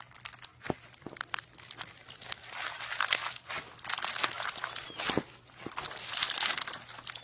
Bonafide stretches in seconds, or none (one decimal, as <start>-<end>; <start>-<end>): 0.0-7.2